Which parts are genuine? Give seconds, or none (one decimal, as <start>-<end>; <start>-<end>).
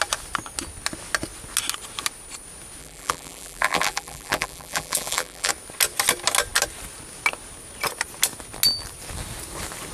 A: 0.0-2.8; 5.5-9.9